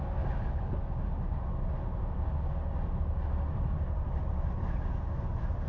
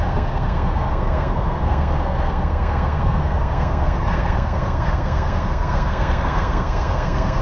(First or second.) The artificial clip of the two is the second